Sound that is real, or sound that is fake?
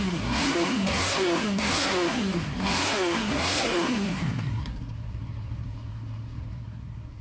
fake